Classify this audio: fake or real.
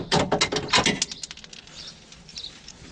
real